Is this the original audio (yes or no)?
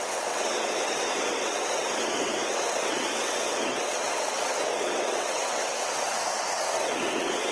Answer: no